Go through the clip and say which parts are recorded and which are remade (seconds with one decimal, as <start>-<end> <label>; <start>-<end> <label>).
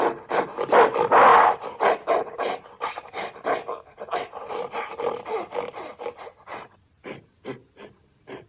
0.0-1.3 recorded; 1.3-5.1 remade; 5.1-8.5 recorded